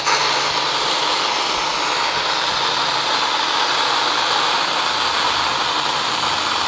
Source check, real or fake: real